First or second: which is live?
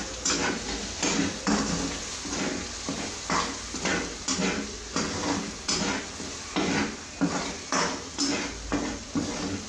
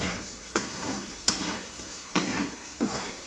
first